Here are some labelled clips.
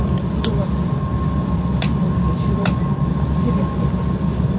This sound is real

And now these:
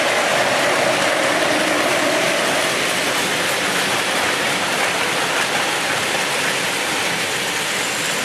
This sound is real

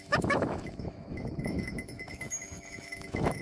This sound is fake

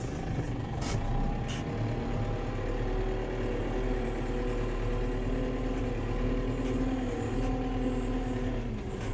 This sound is real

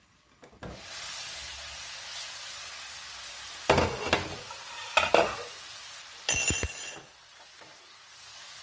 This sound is real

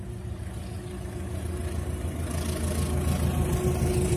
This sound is real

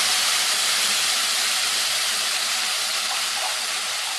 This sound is real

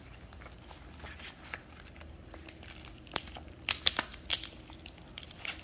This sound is real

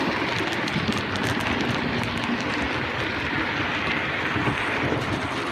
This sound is real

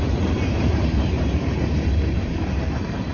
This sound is fake